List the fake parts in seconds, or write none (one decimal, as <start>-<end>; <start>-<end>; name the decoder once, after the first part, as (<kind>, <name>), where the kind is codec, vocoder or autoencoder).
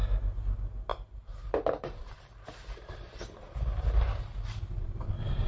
0.9-4.2 (vocoder, BigVGAN v2); 4.8-5.5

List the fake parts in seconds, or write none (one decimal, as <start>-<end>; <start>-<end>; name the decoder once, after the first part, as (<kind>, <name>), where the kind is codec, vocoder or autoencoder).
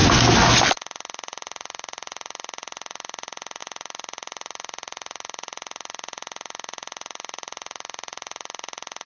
none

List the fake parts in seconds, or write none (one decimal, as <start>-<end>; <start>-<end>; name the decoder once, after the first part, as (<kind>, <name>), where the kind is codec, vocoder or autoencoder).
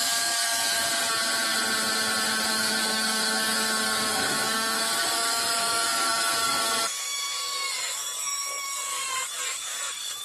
0.0-0.9 (codec, DAC); 2.5-10.2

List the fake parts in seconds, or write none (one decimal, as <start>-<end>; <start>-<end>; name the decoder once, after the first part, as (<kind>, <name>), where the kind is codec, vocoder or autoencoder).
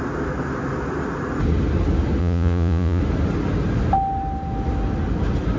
2.2-3.0 (vocoder, Vocos)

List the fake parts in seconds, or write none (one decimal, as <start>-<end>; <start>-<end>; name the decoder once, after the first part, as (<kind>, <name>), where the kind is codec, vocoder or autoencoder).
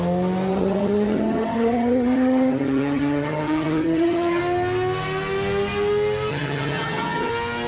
0.5-4.4 (vocoder, HiFi-GAN); 6.3-7.3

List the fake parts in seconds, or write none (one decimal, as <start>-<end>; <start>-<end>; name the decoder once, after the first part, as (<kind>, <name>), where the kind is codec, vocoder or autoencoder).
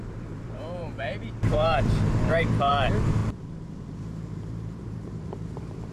0.0-5.9 (vocoder, BigVGAN v2)